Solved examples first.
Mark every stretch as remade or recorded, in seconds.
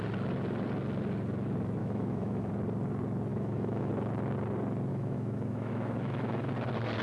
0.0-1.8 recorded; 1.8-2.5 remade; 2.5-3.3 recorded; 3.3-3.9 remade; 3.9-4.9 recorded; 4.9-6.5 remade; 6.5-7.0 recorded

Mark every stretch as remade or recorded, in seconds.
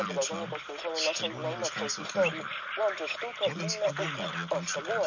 0.0-5.1 recorded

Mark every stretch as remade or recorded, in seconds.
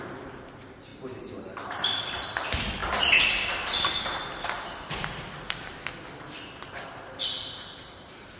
0.0-0.9 recorded; 0.9-2.1 remade; 2.1-8.4 recorded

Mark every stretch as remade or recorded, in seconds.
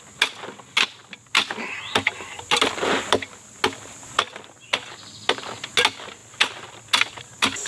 0.0-7.7 recorded